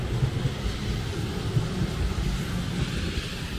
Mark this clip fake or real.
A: real